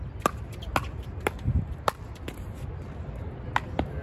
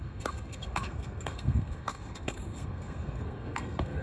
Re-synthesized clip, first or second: second